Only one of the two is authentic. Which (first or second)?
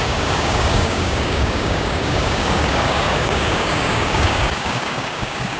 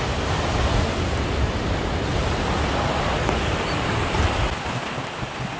second